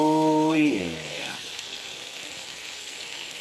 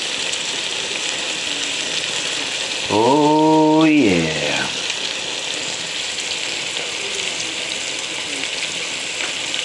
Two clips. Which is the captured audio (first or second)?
second